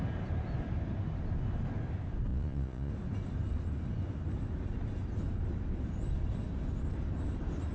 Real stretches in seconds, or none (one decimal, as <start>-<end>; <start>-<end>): 0.0-2.3; 2.9-7.7